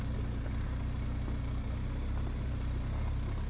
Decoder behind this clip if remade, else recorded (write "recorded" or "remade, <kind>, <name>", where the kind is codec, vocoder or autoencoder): recorded